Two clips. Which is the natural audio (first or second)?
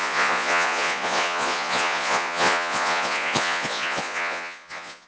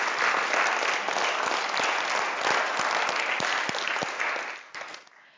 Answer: second